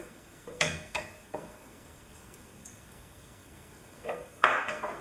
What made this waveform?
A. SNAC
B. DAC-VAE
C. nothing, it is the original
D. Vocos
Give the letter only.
A